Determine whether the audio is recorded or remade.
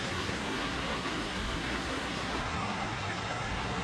remade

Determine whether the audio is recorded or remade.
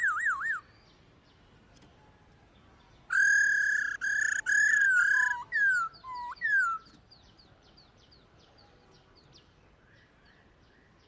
recorded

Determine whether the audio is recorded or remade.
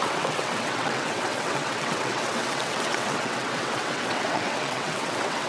remade